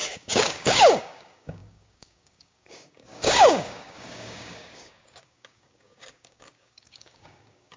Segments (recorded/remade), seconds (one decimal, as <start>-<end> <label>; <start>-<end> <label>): 0.0-7.8 remade